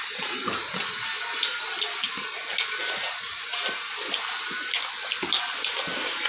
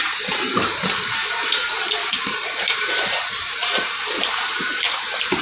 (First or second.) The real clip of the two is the first